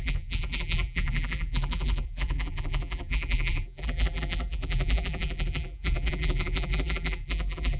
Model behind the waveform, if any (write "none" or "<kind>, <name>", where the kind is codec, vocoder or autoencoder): vocoder, BigVGAN v2